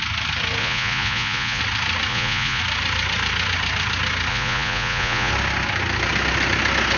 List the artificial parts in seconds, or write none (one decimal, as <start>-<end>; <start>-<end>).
0.6-1.6; 2.1-2.6; 4.3-5.3